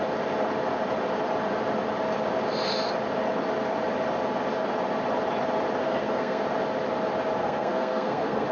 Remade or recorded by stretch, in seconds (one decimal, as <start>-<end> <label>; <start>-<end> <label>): 0.0-5.8 recorded; 5.8-6.4 remade; 6.4-7.4 recorded; 7.4-8.5 remade